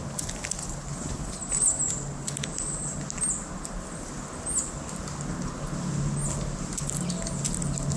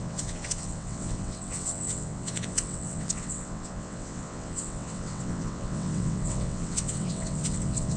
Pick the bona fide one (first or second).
first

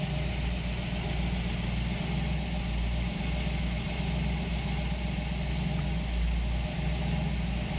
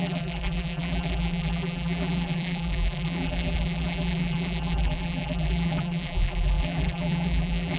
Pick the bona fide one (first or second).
first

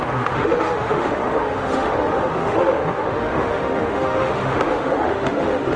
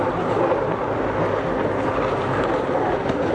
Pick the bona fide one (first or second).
second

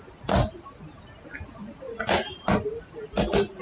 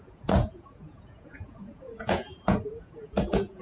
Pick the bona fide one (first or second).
first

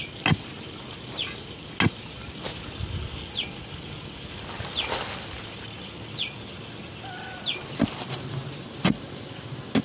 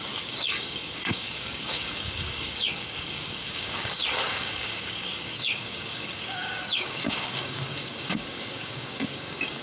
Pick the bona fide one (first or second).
first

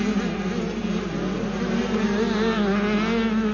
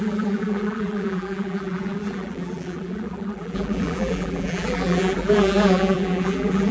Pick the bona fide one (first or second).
first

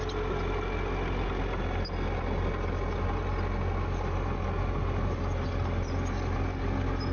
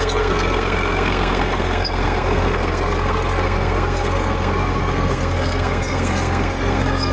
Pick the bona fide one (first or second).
first